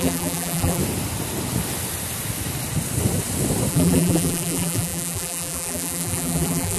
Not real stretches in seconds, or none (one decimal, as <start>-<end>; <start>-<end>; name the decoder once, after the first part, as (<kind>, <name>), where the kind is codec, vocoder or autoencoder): 0.0-0.8 (vocoder, BigVGAN v2); 3.7-6.8